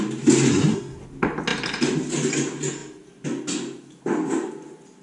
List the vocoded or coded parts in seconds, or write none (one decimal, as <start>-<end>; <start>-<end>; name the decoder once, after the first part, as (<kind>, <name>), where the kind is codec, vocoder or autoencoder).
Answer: 0.5-1.0 (codec, SNAC)